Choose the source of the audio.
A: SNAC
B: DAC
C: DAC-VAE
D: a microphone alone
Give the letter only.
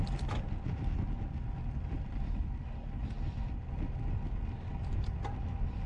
D